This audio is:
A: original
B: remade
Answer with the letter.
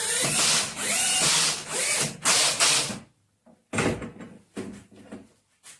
A